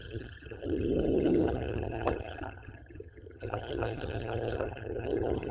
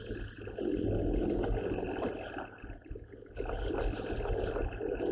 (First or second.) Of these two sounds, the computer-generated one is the first